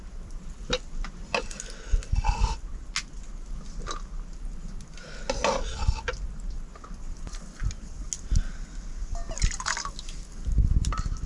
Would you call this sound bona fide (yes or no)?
yes